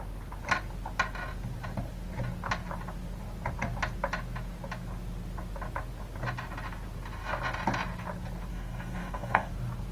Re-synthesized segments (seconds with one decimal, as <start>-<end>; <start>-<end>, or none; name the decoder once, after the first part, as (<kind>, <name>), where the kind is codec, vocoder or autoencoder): 8.5-9.5 (codec, DAC)